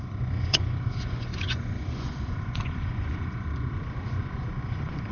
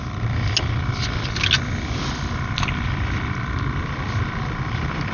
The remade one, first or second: first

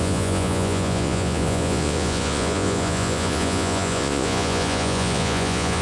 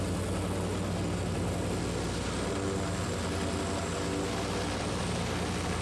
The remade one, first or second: first